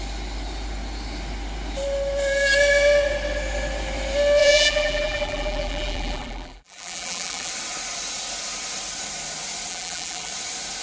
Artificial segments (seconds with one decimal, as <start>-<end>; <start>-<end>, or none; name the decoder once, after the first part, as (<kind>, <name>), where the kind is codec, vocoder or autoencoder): 4.4-7.5 (vocoder, BigVGAN v2); 9.7-10.3